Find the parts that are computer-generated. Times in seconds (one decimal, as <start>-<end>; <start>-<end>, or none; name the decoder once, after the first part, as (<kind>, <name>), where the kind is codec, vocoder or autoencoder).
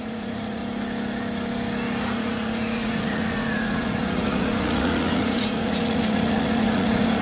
0.0-0.6 (vocoder, Vocos); 2.0-7.2